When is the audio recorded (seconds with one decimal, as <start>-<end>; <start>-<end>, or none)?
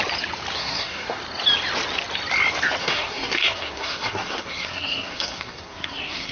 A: 0.0-0.5; 1.2-2.8